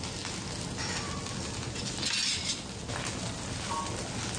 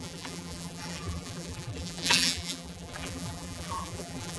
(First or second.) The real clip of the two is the first